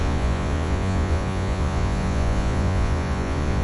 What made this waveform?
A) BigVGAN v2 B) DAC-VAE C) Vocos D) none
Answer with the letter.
C